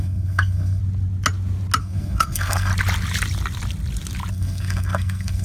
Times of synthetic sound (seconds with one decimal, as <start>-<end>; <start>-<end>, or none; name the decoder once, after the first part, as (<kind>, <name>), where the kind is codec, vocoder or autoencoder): 0.0-0.8 (codec, SNAC); 1.8-2.7; 4.3-5.4